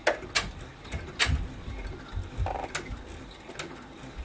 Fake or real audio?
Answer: real